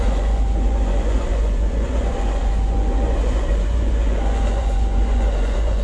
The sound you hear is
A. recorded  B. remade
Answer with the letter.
B